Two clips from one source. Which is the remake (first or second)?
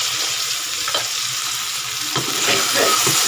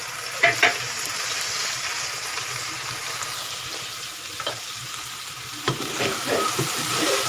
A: second